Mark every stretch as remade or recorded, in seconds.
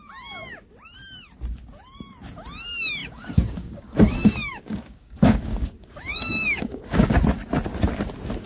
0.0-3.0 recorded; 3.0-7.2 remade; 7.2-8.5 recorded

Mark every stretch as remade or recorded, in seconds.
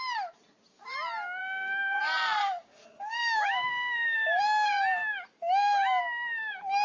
0.0-1.4 recorded; 1.4-2.0 remade; 2.0-2.4 recorded; 2.4-4.4 remade; 4.4-6.8 recorded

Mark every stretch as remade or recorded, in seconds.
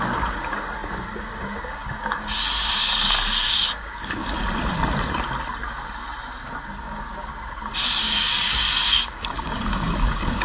0.0-4.4 remade; 4.4-6.8 recorded; 6.8-7.3 remade; 7.3-8.0 recorded; 8.0-10.4 remade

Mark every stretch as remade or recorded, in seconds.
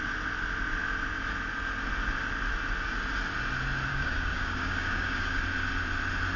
0.0-3.9 recorded; 3.9-5.4 remade; 5.4-6.4 recorded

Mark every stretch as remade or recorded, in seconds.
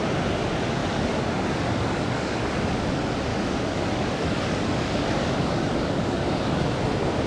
0.0-0.8 recorded; 0.8-2.5 remade; 2.5-3.3 recorded; 3.3-6.7 remade; 6.7-7.3 recorded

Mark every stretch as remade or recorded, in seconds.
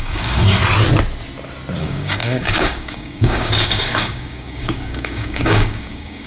0.0-0.6 remade; 0.6-1.8 recorded; 1.8-6.3 remade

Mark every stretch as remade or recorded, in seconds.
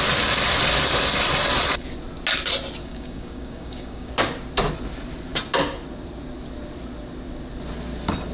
0.0-2.8 recorded; 2.8-4.1 remade; 4.1-8.3 recorded